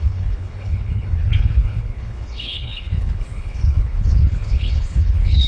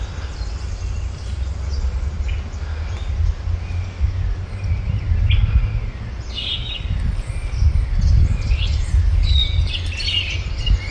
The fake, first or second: first